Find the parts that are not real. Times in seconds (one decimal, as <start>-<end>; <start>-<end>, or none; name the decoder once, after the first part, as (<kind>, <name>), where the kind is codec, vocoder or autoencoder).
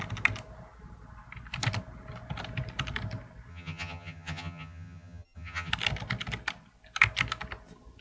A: 3.5-5.7 (vocoder, HiFi-GAN)